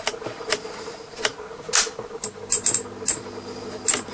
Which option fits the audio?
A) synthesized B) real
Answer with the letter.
B